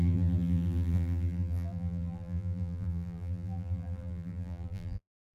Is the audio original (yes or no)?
no